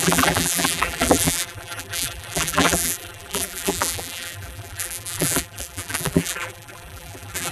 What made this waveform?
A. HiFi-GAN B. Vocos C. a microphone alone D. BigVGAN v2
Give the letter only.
D